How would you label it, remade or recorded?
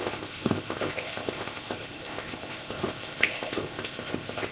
remade